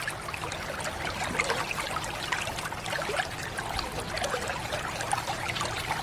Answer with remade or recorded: recorded